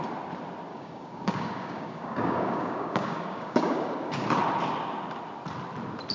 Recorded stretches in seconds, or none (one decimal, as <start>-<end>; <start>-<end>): 0.0-0.7; 4.4-6.1